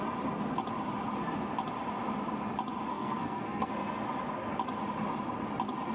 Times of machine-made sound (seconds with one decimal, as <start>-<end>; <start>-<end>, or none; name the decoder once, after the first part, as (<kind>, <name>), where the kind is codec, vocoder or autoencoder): 2.9-3.7 (codec, SNAC)